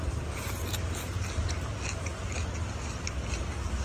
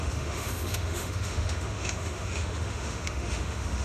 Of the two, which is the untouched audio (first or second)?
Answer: first